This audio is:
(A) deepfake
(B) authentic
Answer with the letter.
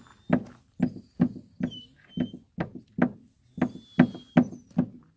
B